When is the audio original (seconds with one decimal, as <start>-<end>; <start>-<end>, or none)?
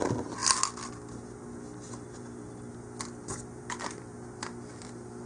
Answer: 0.0-5.3